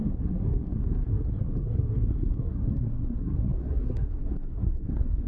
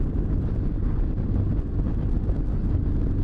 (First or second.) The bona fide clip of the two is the second